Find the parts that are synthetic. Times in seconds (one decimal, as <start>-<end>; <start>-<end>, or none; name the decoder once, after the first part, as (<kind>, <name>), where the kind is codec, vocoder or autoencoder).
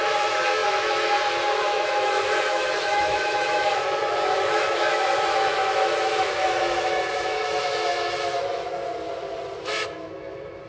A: 0.0-8.7 (autoencoder, DAC-VAE); 9.6-10.7